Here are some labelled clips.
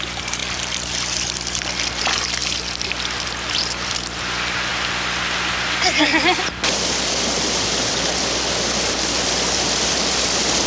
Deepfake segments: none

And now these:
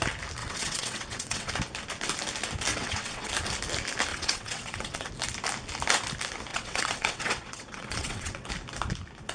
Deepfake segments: 0.4-1.5 (vocoder, WaveNeXt); 2.7-3.3; 4.1-5.1; 6.5-8.5